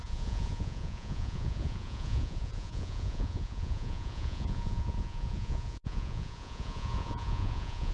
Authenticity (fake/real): fake